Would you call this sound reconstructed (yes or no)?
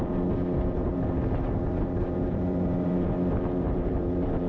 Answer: yes